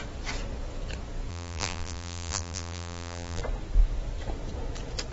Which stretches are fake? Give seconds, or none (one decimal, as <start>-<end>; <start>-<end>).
1.3-3.4